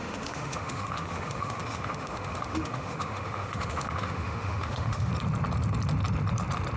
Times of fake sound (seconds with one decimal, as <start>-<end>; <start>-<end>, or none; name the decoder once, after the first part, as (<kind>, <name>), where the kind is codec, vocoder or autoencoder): 0.0-5.1 (autoencoder, DAC-VAE)